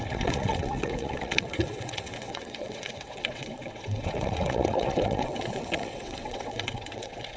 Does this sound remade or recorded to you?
remade